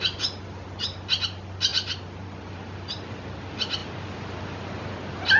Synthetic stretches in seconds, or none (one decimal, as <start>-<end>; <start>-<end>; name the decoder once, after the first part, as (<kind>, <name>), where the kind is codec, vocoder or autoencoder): none